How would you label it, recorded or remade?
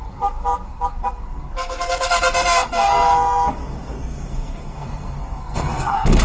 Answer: remade